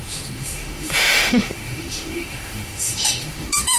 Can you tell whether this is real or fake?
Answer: fake